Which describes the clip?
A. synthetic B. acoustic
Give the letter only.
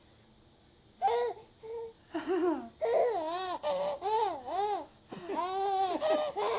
B